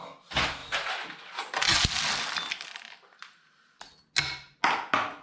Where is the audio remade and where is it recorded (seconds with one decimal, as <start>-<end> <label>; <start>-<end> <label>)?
0.0-5.2 recorded